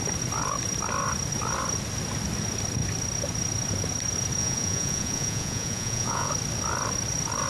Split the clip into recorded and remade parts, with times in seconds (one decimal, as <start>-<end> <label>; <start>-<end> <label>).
0.0-4.4 recorded; 4.4-6.3 remade; 6.3-7.5 recorded